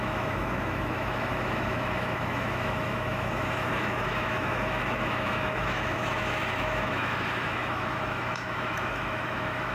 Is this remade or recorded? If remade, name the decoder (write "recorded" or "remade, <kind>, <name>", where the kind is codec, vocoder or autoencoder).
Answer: remade, autoencoder, DAC-VAE